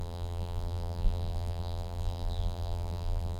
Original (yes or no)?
no